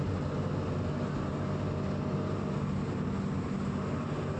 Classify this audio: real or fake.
real